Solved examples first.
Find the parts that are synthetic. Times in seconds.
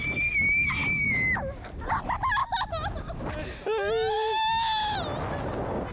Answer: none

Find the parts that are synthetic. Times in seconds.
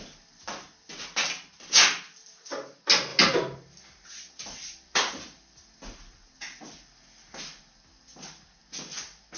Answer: none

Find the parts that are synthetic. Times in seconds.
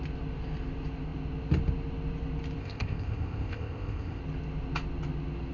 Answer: 2.6-4.2 (codec, ZipCodec)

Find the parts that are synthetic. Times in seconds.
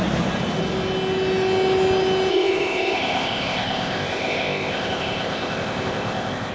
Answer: 2.3-6.5 (codec, ZipCodec)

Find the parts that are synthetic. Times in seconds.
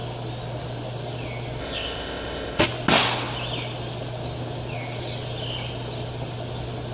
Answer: 1.6-2.6 (codec, ZipCodec)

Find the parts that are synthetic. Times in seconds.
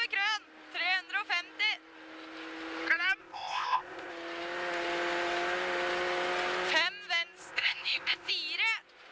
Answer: 3.2-4.1 (codec, ZipCodec); 7.4-8.3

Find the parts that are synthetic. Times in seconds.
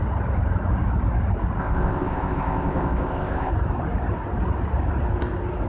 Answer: 1.6-3.5 (codec, ZipCodec)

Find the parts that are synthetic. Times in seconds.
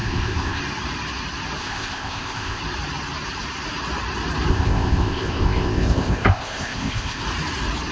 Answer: 0.0-0.6 (codec, ZipCodec); 1.6-2.6; 4.5-7.2